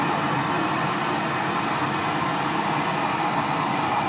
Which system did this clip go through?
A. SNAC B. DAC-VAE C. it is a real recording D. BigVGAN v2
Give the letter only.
C